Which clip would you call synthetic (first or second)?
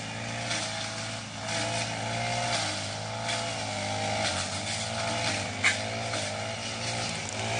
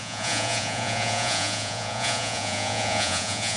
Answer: second